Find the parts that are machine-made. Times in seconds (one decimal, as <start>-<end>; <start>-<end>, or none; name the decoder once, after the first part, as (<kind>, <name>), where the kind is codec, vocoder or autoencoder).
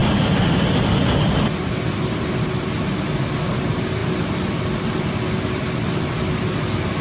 none